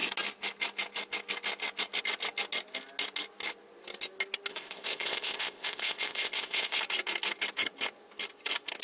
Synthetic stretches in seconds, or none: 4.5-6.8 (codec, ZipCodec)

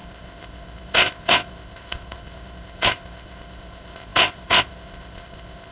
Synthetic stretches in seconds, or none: 0.0-5.7 (codec, ZipCodec)

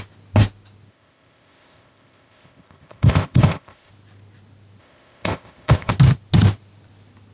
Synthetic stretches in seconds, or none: 0.9-3.9 (codec, ZipCodec); 4.8-5.9

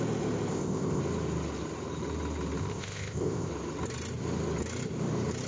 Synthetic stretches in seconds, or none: 0.5-1.0 (codec, ZipCodec); 2.6-3.5

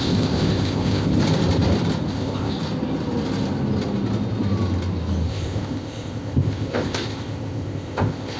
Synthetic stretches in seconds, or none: 0.0-1.1 (codec, ZipCodec); 2.1-2.5; 5.3-8.4

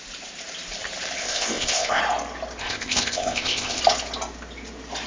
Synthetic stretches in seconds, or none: 1.2-2.0 (codec, ZipCodec); 2.6-3.8